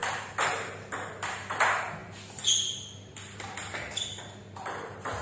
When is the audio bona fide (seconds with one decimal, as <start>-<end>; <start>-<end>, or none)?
0.0-5.2